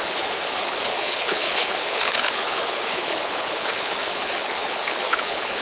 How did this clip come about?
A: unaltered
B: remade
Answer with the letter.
B